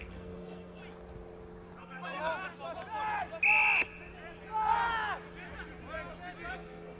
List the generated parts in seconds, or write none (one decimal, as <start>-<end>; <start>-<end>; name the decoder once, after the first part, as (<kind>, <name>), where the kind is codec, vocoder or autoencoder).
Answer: 0.0-0.8 (codec, SNAC); 1.8-2.3; 6.5-7.0